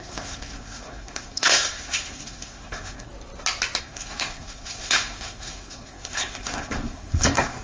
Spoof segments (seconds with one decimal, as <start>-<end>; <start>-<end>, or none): 0.0-3.1; 3.8-7.6